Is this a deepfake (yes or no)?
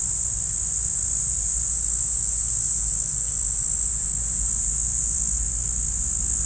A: no